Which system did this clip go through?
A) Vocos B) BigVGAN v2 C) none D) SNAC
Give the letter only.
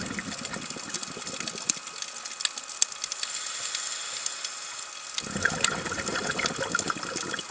C